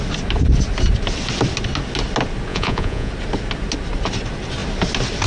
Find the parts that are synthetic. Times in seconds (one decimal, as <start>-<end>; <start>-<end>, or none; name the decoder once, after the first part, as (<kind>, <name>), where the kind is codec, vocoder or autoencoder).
2.5-3.1 (vocoder, Vocos)